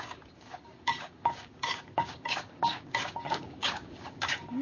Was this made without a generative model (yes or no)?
no